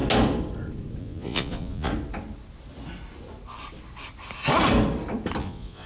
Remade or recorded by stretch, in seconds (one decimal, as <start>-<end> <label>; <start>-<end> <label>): 0.0-1.0 recorded; 1.0-1.9 remade; 1.9-5.4 recorded; 5.4-5.9 remade

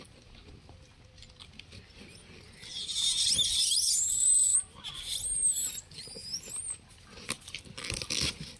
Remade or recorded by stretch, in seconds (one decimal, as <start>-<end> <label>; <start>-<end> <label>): 0.0-8.6 recorded